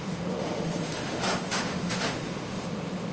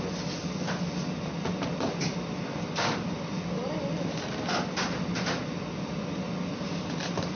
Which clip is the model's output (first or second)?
first